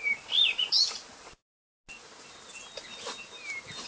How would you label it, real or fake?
real